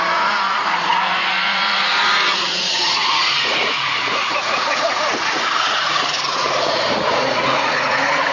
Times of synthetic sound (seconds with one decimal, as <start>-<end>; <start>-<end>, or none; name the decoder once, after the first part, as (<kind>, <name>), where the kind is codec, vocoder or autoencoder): 0.0-8.3 (vocoder, Vocos)